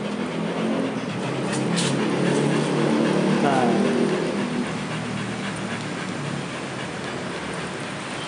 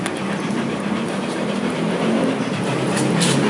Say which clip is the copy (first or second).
second